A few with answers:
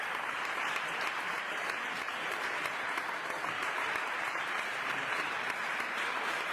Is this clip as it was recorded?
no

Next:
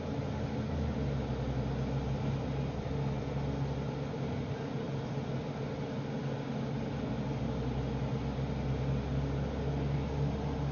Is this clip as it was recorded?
yes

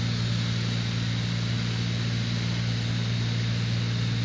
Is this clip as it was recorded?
yes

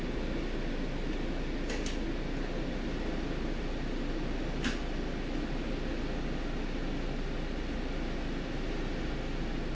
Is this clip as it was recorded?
yes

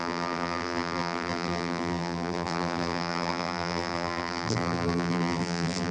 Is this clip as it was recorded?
no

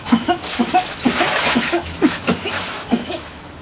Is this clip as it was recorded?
no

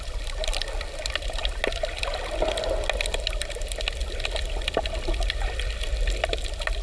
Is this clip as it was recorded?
yes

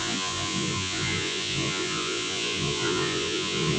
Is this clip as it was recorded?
no